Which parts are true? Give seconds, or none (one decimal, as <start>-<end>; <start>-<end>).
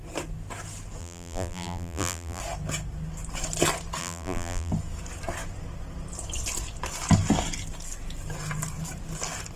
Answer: 0.0-1.0; 2.4-4.0; 4.7-9.6